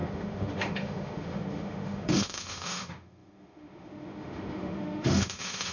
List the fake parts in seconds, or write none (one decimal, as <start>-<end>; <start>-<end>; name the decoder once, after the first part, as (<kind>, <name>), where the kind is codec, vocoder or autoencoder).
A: 0.0-5.7 (autoencoder, DAC-VAE)